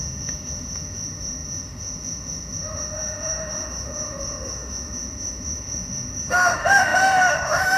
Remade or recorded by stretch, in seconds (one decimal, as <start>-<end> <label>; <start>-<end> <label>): 0.0-7.8 remade